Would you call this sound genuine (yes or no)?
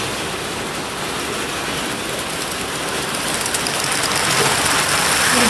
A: yes